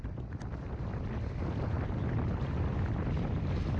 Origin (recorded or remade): recorded